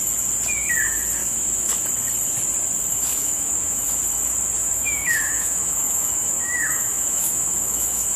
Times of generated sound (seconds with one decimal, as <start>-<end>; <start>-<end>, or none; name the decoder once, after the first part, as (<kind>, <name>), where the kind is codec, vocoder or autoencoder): 1.2-1.8 (autoencoder, DAC-VAE); 2.9-4.0; 4.6-8.2